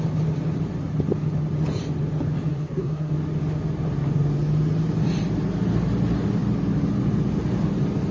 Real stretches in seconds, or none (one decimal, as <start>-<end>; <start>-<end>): 0.0-2.5; 3.1-8.1

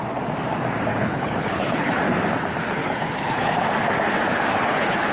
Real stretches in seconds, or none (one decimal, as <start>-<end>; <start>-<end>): 0.0-0.9; 2.0-2.8; 3.7-4.5